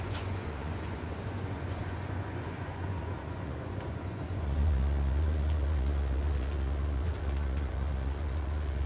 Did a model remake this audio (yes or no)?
yes